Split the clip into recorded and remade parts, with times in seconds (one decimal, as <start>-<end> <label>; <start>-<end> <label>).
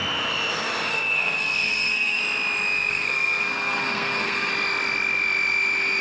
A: 0.0-0.9 recorded; 0.9-2.2 remade; 2.2-2.9 recorded; 2.9-4.5 remade; 4.5-6.0 recorded